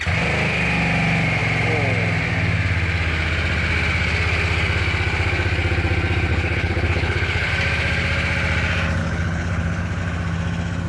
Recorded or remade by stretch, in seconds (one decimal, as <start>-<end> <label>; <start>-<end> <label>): 0.0-6.3 recorded; 6.3-7.5 remade; 7.5-9.0 recorded; 9.0-10.0 remade; 10.0-10.9 recorded